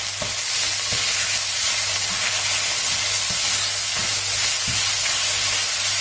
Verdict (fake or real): real